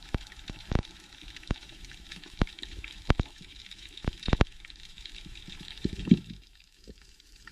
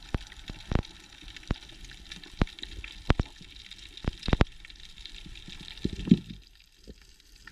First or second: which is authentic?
second